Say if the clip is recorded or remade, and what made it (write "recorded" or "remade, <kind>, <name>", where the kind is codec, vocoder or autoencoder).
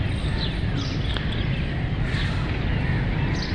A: recorded